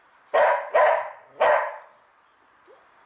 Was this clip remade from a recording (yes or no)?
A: no